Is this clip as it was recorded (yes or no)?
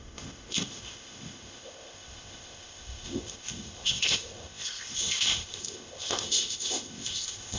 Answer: no